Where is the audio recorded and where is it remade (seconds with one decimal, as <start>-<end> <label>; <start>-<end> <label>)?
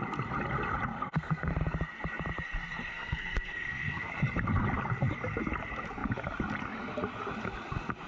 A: 0.0-0.9 recorded; 0.9-1.5 remade; 1.5-2.9 recorded; 2.9-4.1 remade; 4.1-8.1 recorded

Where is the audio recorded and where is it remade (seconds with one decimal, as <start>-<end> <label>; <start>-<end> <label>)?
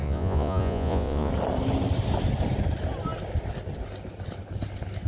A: 0.0-1.3 remade; 1.3-5.1 recorded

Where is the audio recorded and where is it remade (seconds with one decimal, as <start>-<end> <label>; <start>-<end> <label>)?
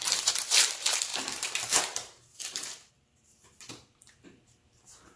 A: 0.0-5.2 remade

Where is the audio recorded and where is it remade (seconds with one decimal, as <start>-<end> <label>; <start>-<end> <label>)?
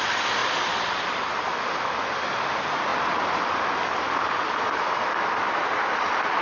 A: 0.0-6.4 recorded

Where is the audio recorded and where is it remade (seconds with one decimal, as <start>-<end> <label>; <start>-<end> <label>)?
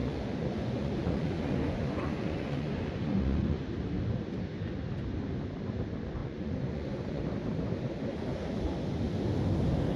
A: 0.0-3.6 remade; 3.6-6.2 recorded; 6.2-7.2 remade; 7.2-10.0 recorded